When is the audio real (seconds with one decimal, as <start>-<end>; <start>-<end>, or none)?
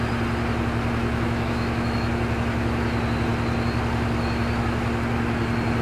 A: 0.0-1.0; 2.1-5.8